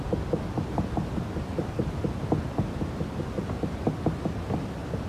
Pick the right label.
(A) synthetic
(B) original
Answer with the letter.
B